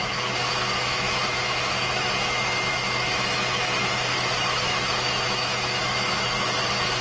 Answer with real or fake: fake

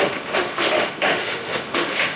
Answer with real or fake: fake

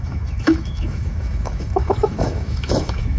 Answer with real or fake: fake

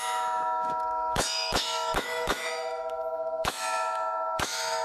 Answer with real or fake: fake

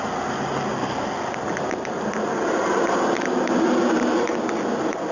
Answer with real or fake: real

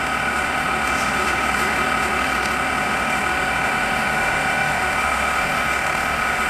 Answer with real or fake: fake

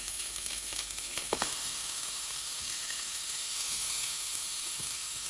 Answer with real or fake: fake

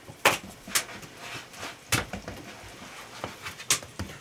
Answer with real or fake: real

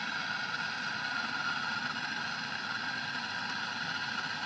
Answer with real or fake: real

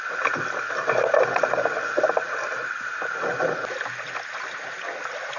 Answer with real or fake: real